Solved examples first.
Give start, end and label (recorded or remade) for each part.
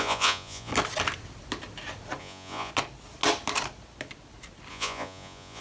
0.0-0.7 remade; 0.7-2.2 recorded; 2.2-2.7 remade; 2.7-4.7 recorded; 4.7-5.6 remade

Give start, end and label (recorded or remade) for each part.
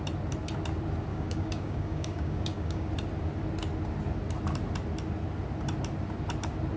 0.0-1.1 recorded; 1.1-2.9 remade; 2.9-6.8 recorded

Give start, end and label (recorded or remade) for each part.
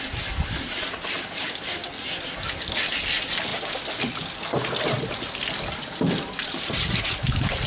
0.0-7.7 recorded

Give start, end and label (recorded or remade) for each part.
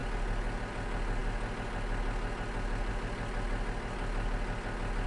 0.0-5.1 recorded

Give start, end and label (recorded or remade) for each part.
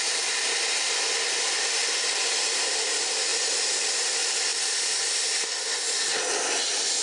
0.0-1.8 remade; 1.8-2.5 recorded; 2.5-3.3 remade; 3.3-3.8 recorded; 3.8-7.0 remade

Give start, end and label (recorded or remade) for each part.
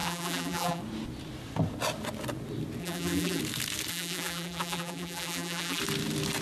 0.0-0.8 remade; 0.8-2.8 recorded; 2.8-3.4 remade; 3.4-3.9 recorded; 3.9-5.8 remade; 5.8-6.4 recorded